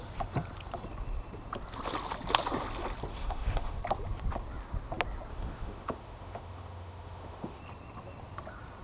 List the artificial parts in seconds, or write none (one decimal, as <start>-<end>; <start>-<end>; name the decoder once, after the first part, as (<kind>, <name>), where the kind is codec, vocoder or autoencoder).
3.1-3.8 (autoencoder, DAC-VAE); 5.3-7.6